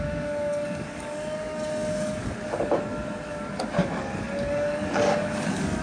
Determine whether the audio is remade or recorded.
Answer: remade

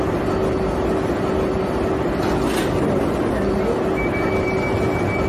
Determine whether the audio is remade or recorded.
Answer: recorded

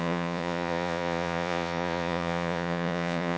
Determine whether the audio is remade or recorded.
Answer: remade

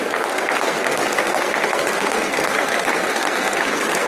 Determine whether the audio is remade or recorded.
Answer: remade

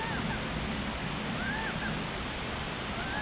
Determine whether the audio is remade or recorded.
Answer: recorded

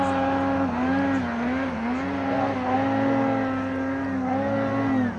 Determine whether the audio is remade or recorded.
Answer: recorded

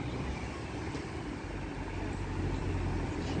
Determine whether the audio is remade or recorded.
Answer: recorded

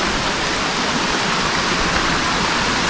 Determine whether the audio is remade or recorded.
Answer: recorded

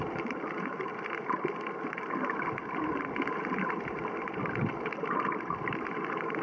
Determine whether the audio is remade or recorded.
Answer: remade